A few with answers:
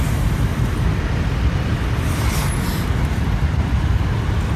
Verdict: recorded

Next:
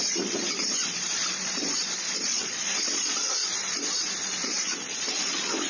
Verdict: remade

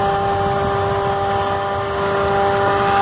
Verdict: recorded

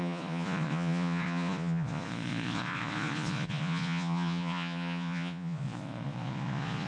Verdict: remade